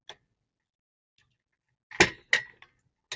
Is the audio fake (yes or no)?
no